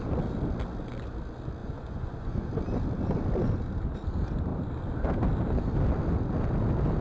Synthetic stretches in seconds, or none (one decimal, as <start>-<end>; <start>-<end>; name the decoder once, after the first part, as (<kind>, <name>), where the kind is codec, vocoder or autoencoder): 1.6-2.5 (vocoder, Vocos)